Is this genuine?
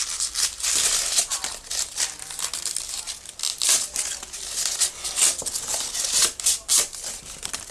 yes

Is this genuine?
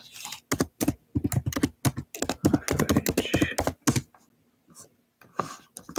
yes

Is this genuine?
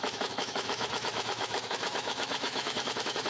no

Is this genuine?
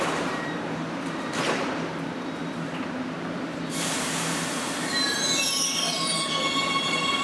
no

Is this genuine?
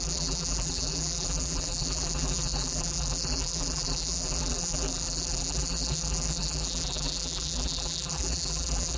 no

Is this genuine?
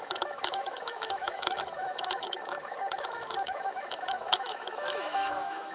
no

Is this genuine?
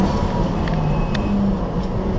yes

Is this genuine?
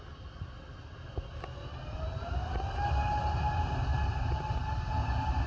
yes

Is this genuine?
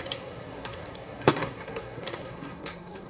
no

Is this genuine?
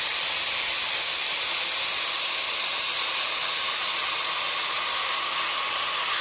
yes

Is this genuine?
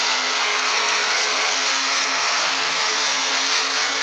no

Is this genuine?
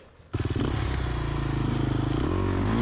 yes